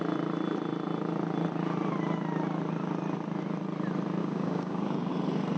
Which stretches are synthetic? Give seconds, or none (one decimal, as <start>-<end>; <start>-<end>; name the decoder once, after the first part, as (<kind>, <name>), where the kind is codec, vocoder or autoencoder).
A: 4.2-5.1 (codec, DAC)